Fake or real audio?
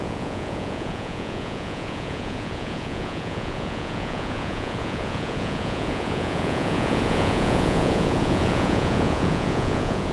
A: fake